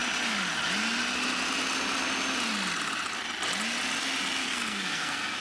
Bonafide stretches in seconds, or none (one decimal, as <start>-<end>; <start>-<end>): 0.0-4.4